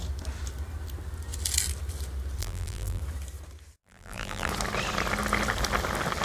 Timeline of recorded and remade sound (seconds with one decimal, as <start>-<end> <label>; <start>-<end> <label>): 0.0-2.4 recorded; 2.4-3.0 remade; 3.0-3.8 recorded; 3.8-4.5 remade; 4.5-6.2 recorded